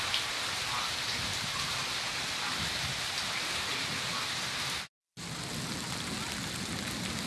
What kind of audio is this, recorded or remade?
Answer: recorded